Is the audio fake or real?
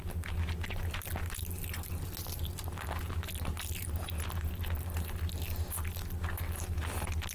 real